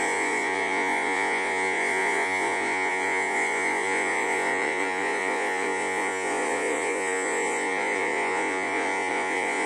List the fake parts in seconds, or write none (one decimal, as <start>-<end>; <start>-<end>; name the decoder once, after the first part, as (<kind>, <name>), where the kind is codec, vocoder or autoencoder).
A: 0.0-9.7 (vocoder, Vocos)